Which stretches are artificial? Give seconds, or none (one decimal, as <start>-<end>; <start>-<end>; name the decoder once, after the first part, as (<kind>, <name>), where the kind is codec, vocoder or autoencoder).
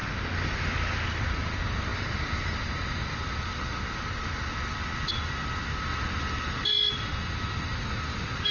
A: none